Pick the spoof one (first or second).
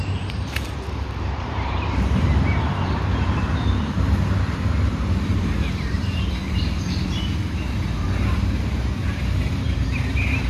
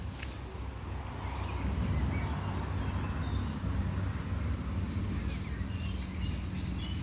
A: first